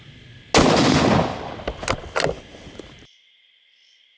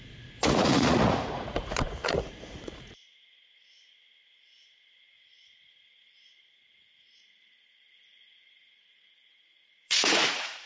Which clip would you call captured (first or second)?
first